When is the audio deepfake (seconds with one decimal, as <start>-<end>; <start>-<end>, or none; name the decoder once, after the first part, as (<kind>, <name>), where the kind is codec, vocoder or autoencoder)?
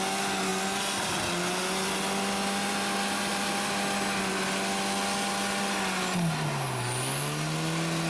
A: none